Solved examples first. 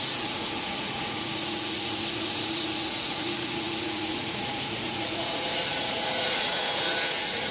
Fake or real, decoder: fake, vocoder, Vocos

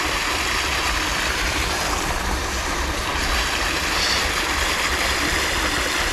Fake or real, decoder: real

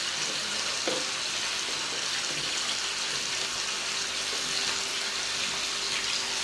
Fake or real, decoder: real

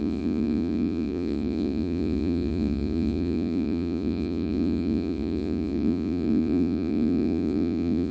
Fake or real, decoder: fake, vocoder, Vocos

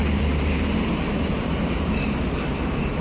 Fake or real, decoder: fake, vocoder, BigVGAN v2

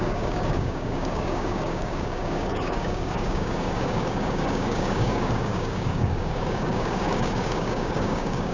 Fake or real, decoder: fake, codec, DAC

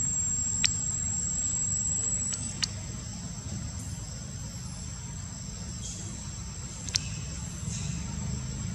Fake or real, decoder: real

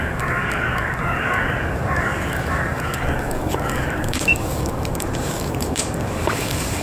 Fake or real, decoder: fake, codec, DAC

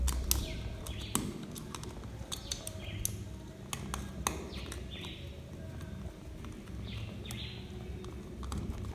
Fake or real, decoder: real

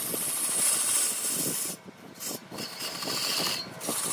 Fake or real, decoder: real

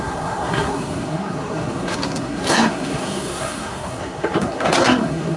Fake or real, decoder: fake, codec, SNAC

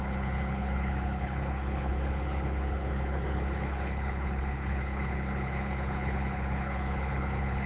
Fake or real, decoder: fake, codec, HILCodec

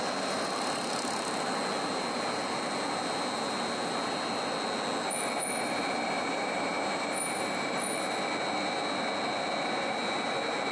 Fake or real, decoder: real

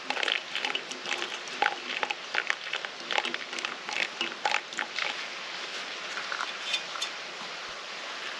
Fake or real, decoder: real